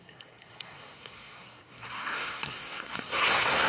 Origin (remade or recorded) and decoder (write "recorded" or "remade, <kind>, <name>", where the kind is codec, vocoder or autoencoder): remade, codec, SNAC